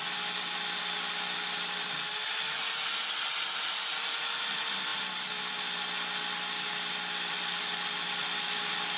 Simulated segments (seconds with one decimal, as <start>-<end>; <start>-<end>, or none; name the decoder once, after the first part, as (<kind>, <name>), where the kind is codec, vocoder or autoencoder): none